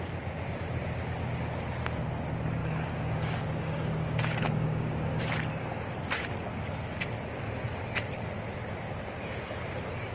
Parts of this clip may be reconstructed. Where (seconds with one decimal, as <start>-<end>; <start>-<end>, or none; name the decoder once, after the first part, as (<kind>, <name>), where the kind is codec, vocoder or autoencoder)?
2.6-5.2 (codec, DAC)